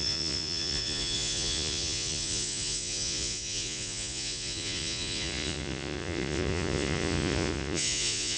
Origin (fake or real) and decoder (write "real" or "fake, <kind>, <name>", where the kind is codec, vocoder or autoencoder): fake, vocoder, Vocos